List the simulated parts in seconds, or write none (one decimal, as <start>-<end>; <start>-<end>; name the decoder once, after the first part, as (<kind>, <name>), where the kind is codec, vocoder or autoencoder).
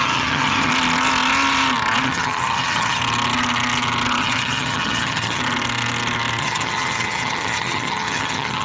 0.0-0.7 (vocoder, HiFi-GAN); 2.0-3.0; 4.2-5.4; 6.4-8.6